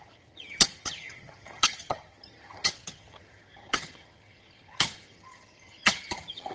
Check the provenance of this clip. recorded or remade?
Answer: remade